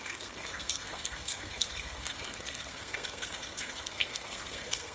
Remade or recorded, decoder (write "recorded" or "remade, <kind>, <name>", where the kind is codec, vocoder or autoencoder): remade, codec, SNAC